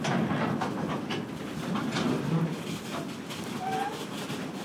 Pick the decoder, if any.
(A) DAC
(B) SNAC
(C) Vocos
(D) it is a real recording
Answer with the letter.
D